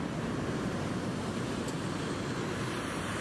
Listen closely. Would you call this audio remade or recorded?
recorded